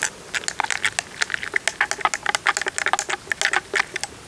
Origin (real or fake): real